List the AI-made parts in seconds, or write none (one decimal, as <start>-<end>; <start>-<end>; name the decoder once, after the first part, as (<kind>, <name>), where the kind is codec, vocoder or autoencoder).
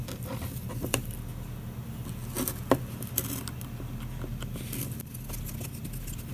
none